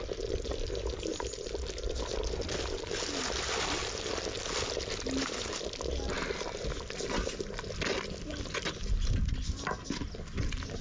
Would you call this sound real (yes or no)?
yes